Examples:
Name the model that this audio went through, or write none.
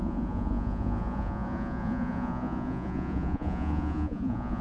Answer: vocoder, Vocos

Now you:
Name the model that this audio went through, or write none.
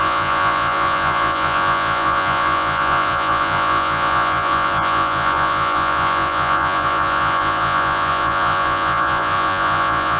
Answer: vocoder, Vocos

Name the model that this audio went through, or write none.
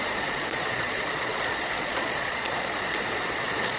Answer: vocoder, Vocos